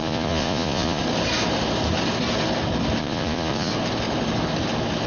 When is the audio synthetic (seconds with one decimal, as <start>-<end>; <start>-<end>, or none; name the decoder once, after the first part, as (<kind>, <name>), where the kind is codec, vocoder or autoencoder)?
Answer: 0.0-1.0 (vocoder, Vocos); 3.0-3.7